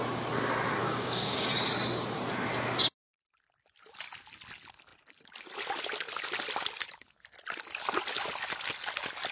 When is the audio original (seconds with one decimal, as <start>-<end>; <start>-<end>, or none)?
0.0-0.8; 1.5-9.3